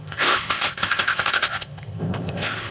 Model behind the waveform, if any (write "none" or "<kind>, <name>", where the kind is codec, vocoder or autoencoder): codec, ZipCodec